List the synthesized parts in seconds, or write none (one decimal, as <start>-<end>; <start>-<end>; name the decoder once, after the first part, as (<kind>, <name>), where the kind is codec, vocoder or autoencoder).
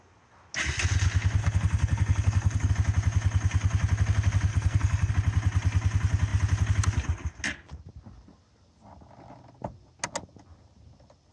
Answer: 1.4-2.7 (codec, SNAC); 4.5-5.1